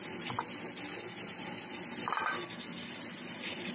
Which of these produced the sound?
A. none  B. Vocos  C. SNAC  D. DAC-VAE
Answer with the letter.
A